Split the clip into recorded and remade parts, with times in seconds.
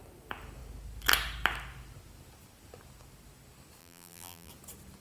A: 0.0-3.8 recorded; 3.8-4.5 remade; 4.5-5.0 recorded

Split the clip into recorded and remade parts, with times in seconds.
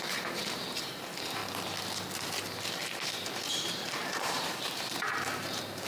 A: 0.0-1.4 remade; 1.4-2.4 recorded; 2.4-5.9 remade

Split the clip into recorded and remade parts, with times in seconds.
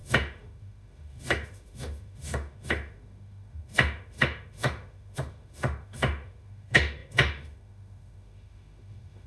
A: 0.0-9.3 remade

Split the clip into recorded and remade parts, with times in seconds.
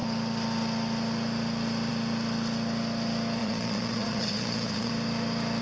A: 0.0-3.4 recorded; 3.4-4.9 remade; 4.9-5.6 recorded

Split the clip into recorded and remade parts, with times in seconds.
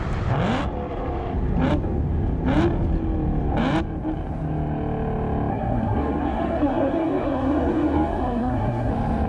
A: 0.0-5.5 recorded; 5.5-8.9 remade; 8.9-9.3 recorded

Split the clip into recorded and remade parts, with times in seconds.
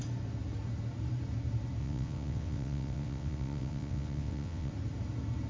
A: 0.0-1.8 recorded; 1.8-4.7 remade; 4.7-5.5 recorded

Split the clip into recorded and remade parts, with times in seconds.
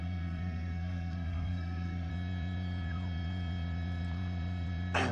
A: 0.0-2.1 remade; 2.1-5.1 recorded